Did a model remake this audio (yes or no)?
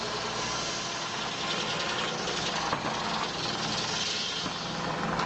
no